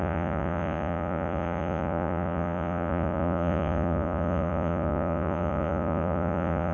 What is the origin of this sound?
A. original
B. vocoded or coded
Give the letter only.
B